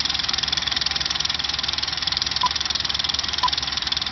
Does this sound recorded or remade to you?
remade